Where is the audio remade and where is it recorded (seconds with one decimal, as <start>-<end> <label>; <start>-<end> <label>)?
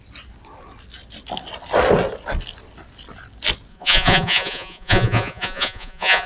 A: 0.0-3.7 recorded; 3.7-6.3 remade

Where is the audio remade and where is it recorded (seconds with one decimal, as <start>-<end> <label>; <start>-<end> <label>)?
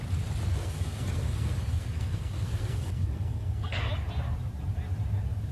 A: 0.0-0.6 recorded; 0.6-3.9 remade; 3.9-5.5 recorded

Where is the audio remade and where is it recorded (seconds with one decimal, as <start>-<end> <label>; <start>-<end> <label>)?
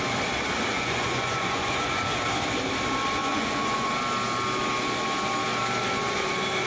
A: 0.0-0.7 recorded; 0.7-2.0 remade; 2.0-3.2 recorded; 3.2-3.9 remade; 3.9-6.7 recorded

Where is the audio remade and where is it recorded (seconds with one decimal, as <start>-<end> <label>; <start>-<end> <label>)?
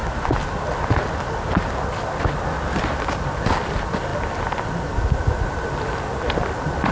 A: 0.0-6.9 recorded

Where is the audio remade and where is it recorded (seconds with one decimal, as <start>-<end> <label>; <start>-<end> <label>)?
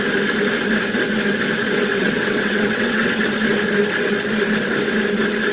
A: 0.0-1.9 recorded; 1.9-3.2 remade; 3.2-5.5 recorded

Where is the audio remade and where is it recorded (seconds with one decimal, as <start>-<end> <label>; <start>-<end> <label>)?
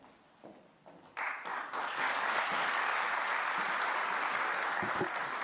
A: 0.0-1.5 recorded; 1.5-3.1 remade; 3.1-5.4 recorded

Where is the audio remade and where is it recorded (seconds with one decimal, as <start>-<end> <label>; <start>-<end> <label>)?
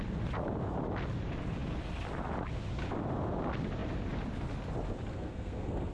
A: 0.0-5.1 recorded; 5.1-5.9 remade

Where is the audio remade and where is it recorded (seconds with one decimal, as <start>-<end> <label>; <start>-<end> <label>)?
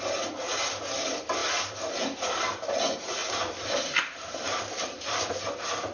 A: 0.0-3.2 recorded; 3.2-5.4 remade; 5.4-5.9 recorded